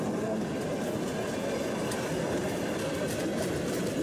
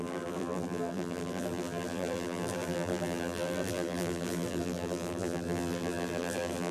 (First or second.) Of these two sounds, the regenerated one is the second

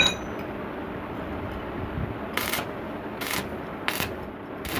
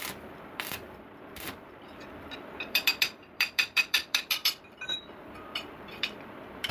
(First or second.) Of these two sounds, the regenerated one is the second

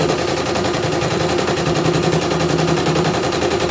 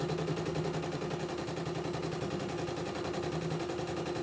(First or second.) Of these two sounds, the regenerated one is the first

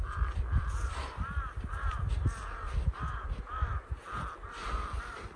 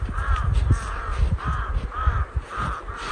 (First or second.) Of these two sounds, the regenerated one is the second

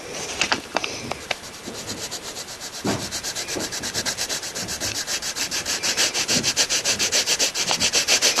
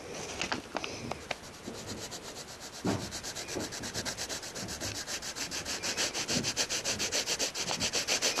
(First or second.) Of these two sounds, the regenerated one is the first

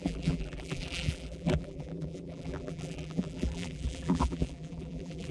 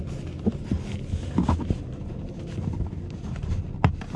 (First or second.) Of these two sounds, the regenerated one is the first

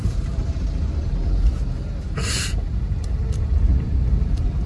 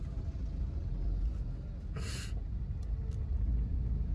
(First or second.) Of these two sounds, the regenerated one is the first